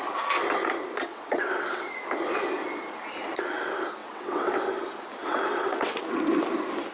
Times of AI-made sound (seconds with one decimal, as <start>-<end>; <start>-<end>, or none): 1.1-1.9; 4.0-4.6; 5.2-6.0